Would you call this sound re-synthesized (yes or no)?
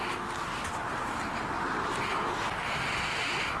no